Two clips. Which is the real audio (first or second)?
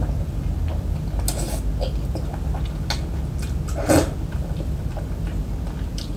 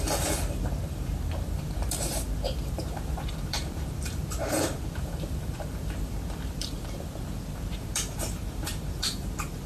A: first